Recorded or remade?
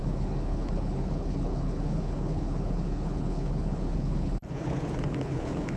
remade